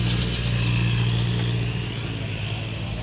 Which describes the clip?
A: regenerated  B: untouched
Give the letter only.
B